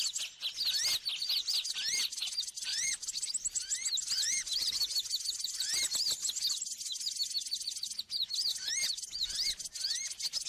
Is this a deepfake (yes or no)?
no